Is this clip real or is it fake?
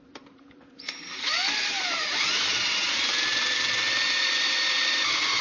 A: fake